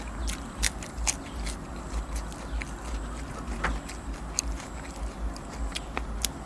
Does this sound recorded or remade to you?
recorded